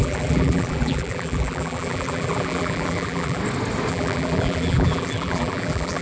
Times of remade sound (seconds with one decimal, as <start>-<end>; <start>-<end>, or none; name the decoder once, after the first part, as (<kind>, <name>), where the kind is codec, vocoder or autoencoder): 0.0-3.4 (vocoder, BigVGAN v2); 3.9-6.0